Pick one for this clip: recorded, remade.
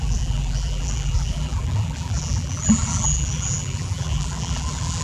remade